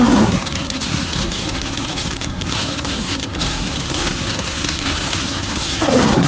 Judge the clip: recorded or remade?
remade